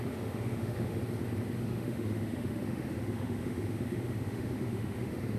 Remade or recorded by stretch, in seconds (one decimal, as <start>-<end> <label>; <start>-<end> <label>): 0.0-1.0 remade; 1.0-1.6 recorded; 1.6-5.4 remade